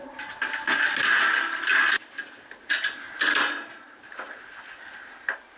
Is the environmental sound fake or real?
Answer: real